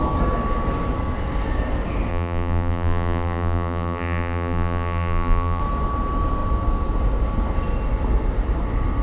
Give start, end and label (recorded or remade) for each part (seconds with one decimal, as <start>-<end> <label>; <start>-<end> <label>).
0.0-2.1 recorded; 2.1-5.6 remade; 5.6-9.0 recorded